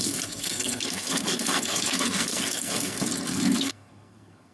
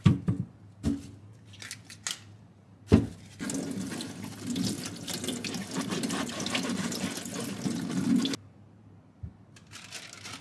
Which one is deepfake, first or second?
first